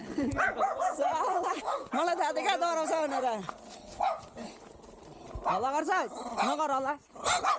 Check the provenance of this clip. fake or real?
real